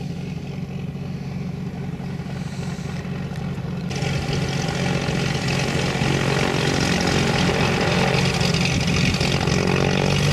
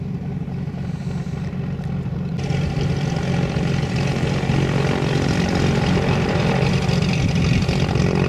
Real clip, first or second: first